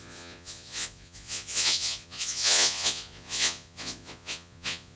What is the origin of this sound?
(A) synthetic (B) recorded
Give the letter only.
A